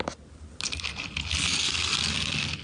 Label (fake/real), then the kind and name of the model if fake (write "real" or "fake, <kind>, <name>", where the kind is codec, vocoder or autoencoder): real